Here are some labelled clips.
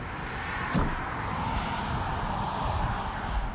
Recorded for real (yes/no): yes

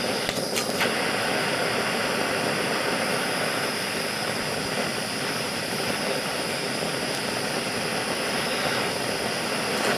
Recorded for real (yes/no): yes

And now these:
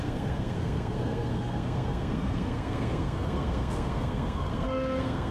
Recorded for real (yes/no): no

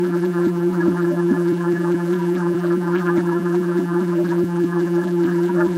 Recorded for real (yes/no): no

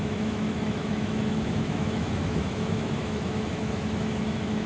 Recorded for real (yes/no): no